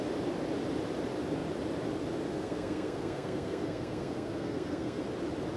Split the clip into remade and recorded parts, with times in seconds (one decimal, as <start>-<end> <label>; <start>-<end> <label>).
0.0-2.3 recorded; 2.3-5.0 remade; 5.0-5.6 recorded